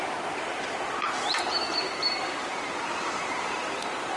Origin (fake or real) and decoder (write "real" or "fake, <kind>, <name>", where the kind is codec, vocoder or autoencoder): fake, vocoder, BigVGAN v2